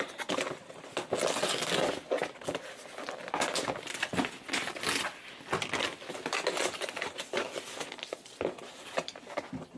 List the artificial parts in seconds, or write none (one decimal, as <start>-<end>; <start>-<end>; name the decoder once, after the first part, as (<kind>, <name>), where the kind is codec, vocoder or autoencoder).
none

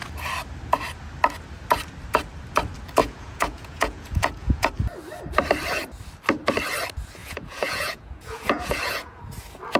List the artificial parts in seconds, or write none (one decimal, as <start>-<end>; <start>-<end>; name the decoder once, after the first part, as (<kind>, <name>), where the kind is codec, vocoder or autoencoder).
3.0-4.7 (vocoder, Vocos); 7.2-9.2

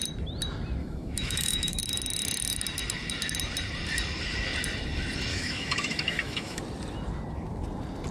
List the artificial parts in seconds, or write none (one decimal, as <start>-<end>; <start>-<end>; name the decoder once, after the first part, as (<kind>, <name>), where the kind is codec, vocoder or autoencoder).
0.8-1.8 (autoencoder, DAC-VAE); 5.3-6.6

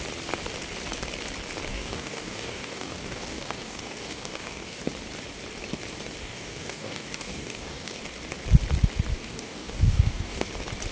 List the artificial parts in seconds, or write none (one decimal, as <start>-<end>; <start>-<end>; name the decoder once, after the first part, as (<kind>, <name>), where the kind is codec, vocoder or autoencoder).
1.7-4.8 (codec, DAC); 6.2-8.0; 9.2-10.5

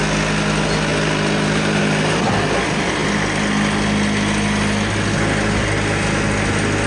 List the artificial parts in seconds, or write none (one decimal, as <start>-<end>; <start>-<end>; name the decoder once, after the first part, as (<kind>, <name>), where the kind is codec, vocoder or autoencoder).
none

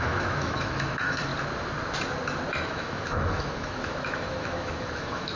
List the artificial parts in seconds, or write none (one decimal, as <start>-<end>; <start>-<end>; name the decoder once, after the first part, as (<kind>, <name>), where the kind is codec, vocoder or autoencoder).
0.0-1.3 (autoencoder, DAC-VAE); 2.5-5.4